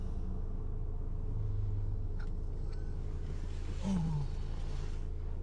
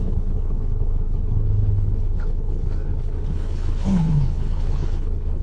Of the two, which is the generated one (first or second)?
second